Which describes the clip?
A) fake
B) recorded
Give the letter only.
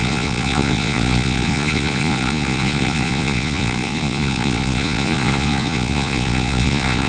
A